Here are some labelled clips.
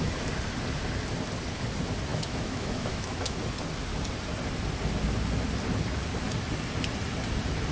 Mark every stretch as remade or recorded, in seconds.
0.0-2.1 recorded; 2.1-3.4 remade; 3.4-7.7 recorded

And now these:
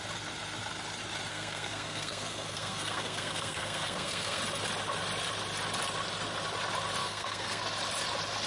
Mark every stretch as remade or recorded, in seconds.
0.0-1.3 recorded; 1.3-4.4 remade; 4.4-7.0 recorded; 7.0-7.6 remade; 7.6-8.5 recorded

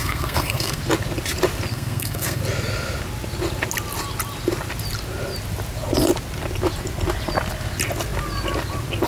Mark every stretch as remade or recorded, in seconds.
0.0-0.8 remade; 0.8-1.7 recorded; 1.7-2.4 remade; 2.4-9.1 recorded